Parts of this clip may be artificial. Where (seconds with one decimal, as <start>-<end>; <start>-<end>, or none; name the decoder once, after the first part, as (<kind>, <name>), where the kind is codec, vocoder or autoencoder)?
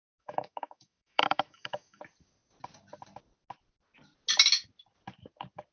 0.0-2.0 (autoencoder, DAC-VAE)